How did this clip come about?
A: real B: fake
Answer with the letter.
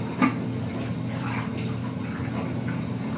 A